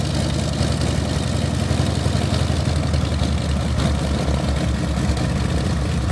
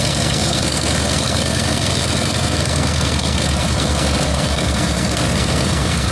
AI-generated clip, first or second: second